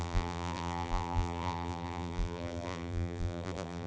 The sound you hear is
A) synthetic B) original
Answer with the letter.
A